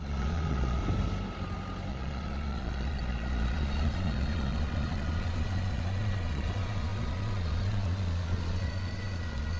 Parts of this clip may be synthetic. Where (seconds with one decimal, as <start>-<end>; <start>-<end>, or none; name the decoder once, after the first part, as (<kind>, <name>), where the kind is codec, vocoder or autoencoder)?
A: 0.0-0.8 (vocoder, Vocos); 1.9-9.6